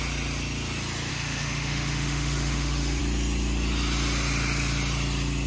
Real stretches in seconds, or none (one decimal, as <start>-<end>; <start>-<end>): 0.0-1.1; 3.0-5.5